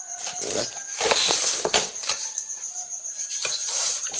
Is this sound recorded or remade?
remade